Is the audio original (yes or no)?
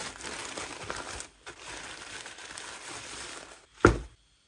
yes